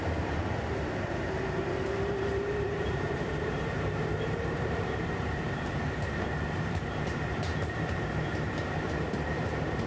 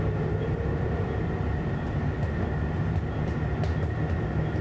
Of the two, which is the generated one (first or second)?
first